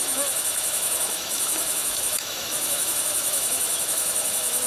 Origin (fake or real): fake